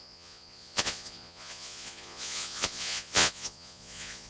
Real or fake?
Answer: fake